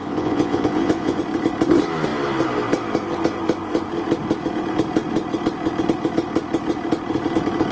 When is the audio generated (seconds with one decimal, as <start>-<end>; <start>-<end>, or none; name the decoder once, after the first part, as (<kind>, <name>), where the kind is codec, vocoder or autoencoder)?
0.0-1.2 (vocoder, Vocos)